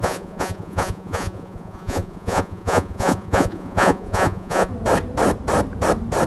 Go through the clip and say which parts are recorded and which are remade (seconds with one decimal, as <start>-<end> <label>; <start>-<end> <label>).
0.0-4.7 remade; 4.7-6.3 recorded